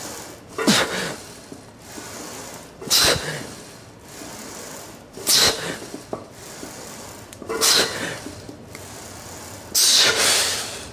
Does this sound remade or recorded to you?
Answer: recorded